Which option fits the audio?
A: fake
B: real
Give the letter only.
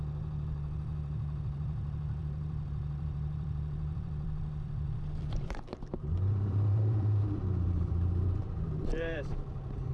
A